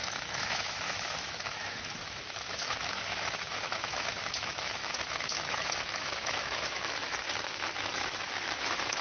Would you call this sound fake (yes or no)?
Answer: yes